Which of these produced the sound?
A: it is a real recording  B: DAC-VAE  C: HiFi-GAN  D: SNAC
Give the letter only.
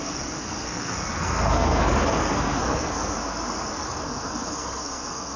D